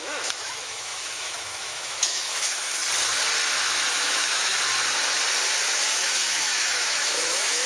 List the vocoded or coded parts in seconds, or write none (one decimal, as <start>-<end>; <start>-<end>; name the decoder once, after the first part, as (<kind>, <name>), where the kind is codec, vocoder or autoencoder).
0.0-2.8 (autoencoder, DAC-VAE); 3.9-4.5; 5.7-7.7